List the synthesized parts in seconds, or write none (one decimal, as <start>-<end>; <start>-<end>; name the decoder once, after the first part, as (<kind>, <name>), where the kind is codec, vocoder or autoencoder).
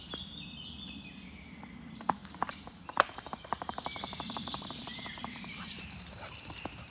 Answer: 2.2-6.3 (vocoder, BigVGAN v2)